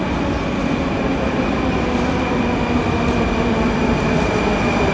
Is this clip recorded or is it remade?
recorded